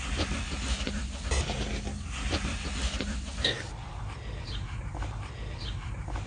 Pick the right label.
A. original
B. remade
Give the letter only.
A